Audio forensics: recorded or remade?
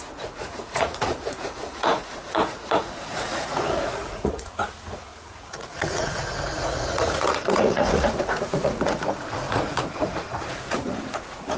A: remade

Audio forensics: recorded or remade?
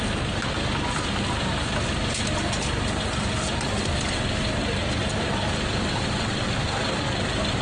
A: recorded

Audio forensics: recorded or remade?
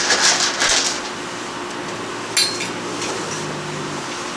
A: recorded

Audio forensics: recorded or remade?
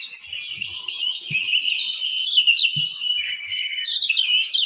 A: recorded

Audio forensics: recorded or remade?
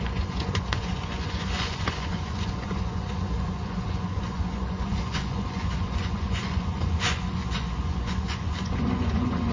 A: remade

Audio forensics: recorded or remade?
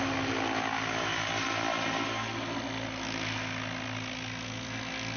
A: recorded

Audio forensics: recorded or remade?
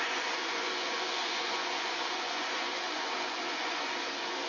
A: remade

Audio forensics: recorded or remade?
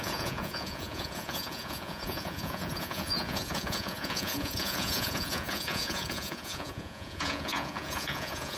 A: remade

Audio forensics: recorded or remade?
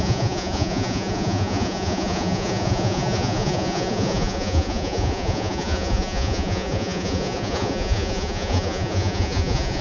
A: remade